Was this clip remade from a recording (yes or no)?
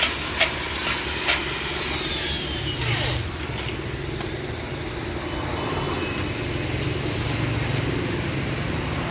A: no